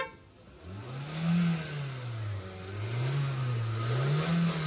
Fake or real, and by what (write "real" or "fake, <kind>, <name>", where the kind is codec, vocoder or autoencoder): real